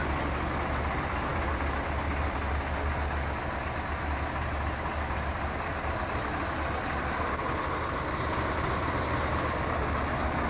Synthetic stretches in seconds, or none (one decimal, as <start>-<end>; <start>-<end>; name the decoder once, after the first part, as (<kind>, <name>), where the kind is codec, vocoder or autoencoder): none